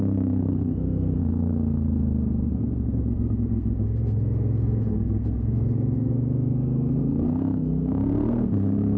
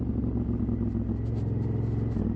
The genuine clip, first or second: second